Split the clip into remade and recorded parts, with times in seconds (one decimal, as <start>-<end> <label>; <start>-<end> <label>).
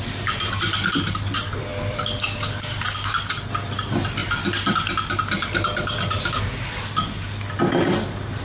0.0-1.7 recorded; 1.7-3.1 remade; 3.1-4.2 recorded; 4.2-6.4 remade; 6.4-8.4 recorded